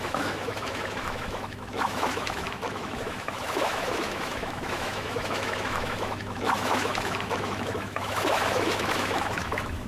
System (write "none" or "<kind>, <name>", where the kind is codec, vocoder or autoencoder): autoencoder, DAC-VAE